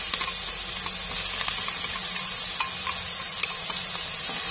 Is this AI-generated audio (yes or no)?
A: no